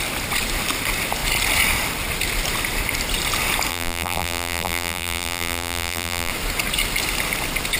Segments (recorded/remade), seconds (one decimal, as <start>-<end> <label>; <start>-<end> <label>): 0.0-3.7 recorded; 3.7-6.3 remade; 6.3-7.8 recorded